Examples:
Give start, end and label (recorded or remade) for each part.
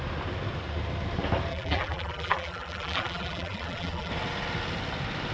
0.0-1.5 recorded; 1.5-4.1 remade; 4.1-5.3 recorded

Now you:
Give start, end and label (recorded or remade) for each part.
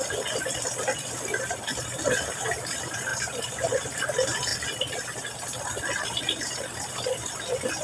0.0-7.8 recorded